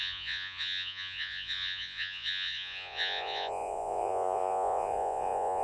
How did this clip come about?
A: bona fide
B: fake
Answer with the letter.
B